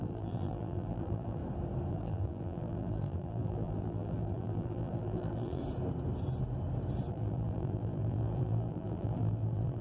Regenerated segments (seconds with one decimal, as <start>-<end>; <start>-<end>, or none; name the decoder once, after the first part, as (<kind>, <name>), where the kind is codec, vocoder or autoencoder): 0.0-1.4 (vocoder, BigVGAN v2); 1.9-5.6; 7.1-9.8